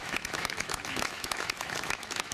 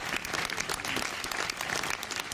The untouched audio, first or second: second